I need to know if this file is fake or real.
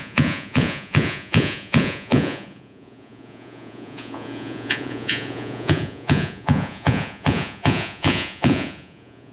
fake